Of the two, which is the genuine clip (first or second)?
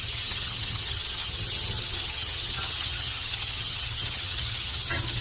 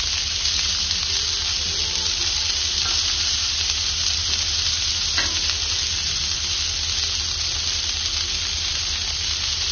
second